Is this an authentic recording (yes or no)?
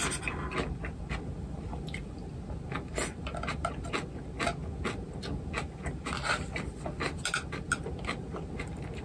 yes